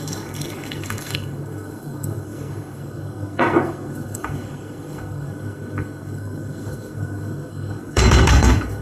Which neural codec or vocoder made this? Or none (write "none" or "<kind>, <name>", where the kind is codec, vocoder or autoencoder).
codec, SNAC